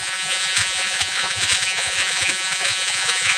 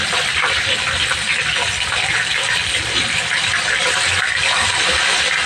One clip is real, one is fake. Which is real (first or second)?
second